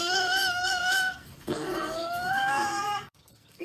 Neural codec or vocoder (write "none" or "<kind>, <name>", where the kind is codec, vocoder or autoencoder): codec, SNAC